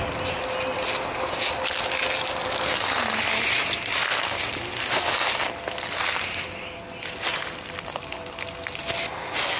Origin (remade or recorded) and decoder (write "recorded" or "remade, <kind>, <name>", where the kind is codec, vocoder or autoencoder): recorded